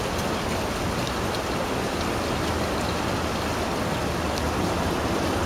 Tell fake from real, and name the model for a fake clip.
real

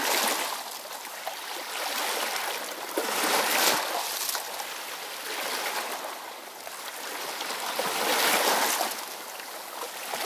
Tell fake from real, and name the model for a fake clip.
real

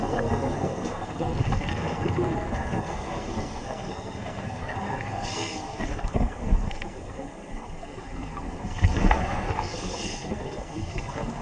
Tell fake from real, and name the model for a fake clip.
fake, codec, SNAC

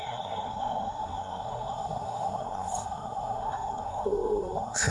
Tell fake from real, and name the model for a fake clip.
fake, codec, SNAC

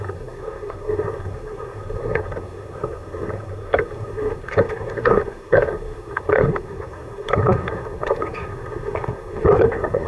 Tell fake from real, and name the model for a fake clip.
fake, codec, SNAC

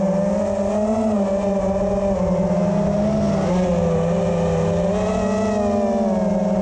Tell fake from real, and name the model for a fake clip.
real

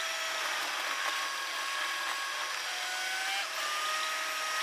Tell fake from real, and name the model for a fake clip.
real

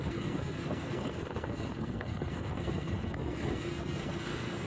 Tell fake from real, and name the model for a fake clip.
fake, codec, SNAC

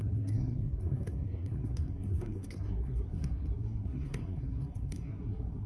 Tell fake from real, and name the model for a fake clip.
fake, codec, SNAC